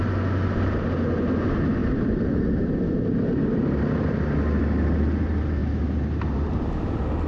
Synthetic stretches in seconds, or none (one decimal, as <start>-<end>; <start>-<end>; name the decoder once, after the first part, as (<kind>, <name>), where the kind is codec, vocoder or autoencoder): 1.8-2.6 (vocoder, BigVGAN v2); 5.6-6.6